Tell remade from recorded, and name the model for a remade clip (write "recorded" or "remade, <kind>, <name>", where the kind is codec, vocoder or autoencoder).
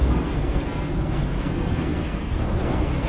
remade, codec, SNAC